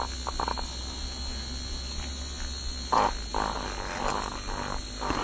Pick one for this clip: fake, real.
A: real